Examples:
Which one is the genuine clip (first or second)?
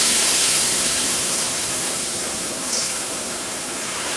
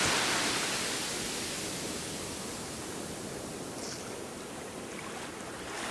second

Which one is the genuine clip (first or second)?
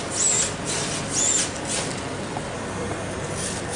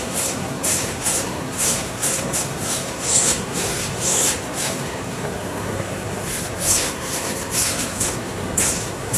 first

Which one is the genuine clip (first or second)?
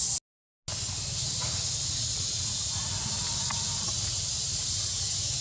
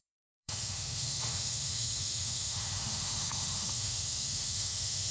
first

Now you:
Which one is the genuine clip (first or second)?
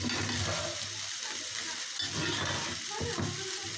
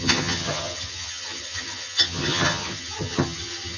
first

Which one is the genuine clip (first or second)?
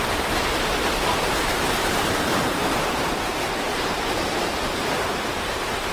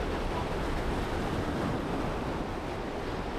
second